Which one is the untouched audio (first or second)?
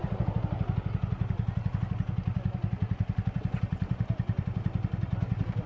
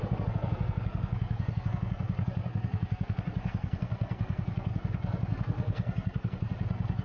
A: first